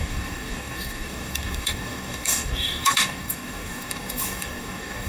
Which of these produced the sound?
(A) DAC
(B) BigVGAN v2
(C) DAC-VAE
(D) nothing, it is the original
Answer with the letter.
A